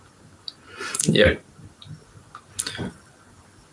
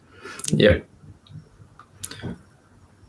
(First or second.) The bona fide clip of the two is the second